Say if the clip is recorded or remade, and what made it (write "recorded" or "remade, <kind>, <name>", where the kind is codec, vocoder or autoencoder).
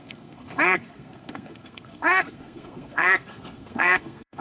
remade, codec, SNAC